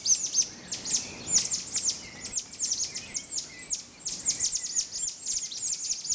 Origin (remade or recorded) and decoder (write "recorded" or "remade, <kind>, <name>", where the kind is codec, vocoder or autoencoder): recorded